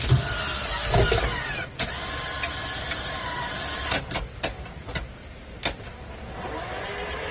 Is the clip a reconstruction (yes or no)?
no